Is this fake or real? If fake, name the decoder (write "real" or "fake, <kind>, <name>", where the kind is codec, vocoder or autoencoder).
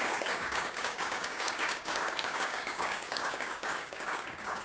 fake, codec, DAC